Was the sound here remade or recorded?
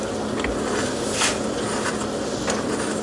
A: recorded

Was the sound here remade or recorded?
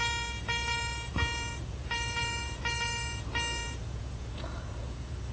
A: remade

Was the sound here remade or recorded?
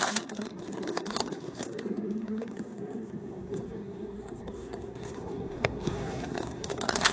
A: remade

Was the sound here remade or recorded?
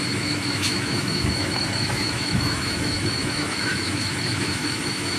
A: remade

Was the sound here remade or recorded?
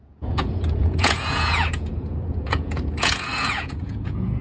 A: remade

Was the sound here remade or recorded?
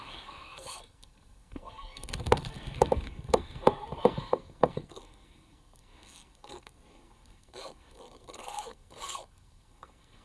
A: remade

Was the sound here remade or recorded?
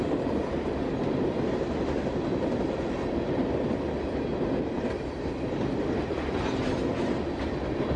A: recorded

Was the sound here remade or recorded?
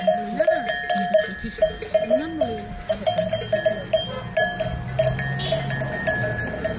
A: recorded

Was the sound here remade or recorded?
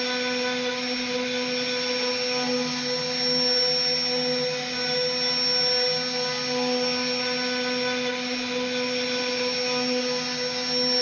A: recorded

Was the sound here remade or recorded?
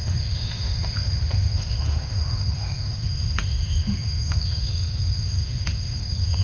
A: remade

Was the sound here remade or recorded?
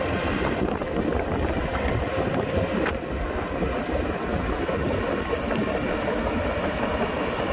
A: recorded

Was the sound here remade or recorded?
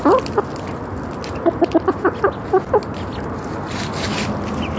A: recorded